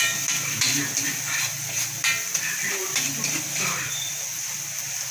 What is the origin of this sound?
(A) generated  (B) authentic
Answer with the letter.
A